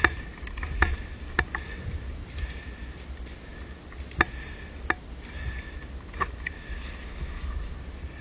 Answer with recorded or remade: recorded